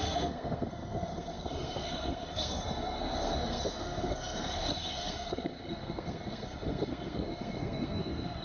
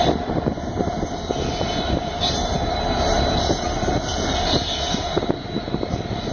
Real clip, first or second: second